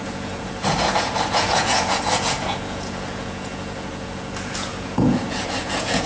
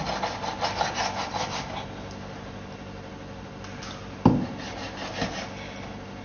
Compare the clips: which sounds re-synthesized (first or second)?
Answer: first